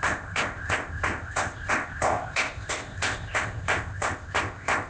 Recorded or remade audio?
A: remade